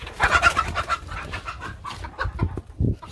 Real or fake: real